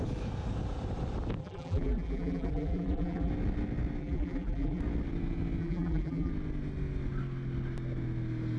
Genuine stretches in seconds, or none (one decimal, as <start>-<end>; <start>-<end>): 0.0-1.4; 3.3-4.0; 4.8-5.6; 6.3-8.6